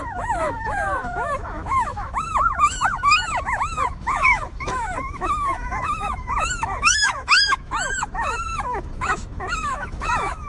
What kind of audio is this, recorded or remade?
remade